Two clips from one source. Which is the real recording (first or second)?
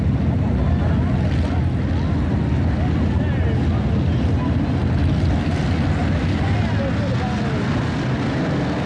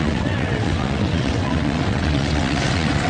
first